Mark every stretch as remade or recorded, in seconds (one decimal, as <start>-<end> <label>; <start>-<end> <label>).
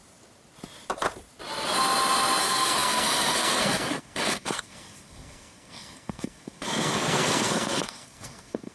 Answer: 0.0-2.4 recorded; 2.4-8.7 remade